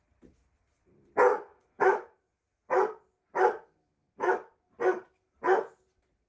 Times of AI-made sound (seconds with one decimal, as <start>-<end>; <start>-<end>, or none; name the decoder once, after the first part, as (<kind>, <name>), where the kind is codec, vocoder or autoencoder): 1.3-2.4 (autoencoder, DAC-VAE)